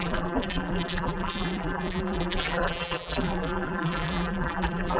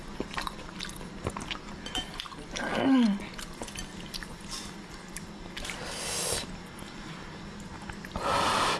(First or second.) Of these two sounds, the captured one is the second